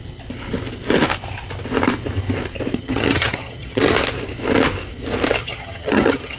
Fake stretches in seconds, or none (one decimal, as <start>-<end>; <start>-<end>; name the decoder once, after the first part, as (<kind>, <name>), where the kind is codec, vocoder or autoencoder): 2.8-3.8 (vocoder, HiFi-GAN); 5.4-6.4